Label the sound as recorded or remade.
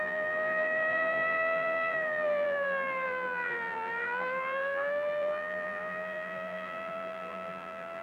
remade